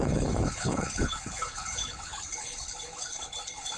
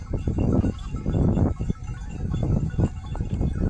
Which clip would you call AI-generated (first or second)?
first